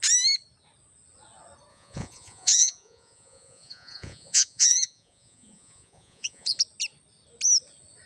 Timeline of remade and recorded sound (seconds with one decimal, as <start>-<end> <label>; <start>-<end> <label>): 0.0-1.7 recorded; 1.7-6.6 remade; 6.6-8.1 recorded